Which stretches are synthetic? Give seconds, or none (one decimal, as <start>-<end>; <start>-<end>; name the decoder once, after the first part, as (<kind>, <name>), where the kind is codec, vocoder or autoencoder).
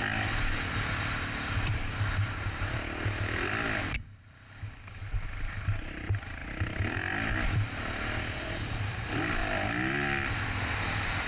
0.0-9.4 (vocoder, BigVGAN v2); 10.3-11.3